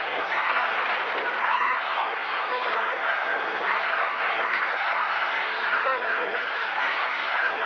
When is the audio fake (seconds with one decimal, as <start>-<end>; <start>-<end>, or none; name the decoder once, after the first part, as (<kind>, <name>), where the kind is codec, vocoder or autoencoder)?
0.0-0.8 (codec, SNAC); 1.4-7.7